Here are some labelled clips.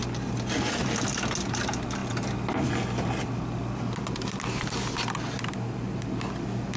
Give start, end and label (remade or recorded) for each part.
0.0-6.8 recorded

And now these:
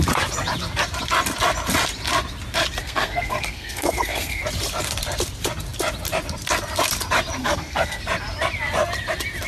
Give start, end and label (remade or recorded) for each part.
0.0-2.8 recorded; 2.8-4.4 remade; 4.4-7.4 recorded; 7.4-8.0 remade; 8.0-9.5 recorded

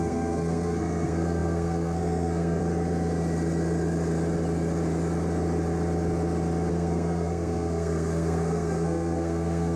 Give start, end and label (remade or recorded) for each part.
0.0-2.6 remade; 2.6-6.7 recorded; 6.7-9.8 remade

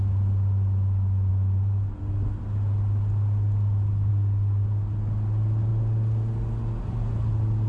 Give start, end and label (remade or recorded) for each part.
0.0-7.7 recorded